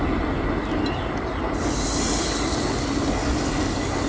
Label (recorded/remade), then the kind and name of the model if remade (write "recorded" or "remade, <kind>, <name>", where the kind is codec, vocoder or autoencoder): recorded